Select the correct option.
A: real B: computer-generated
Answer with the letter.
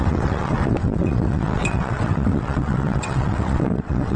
B